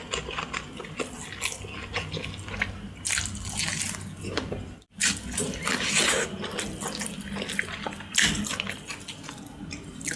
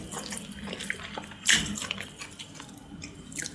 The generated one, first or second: second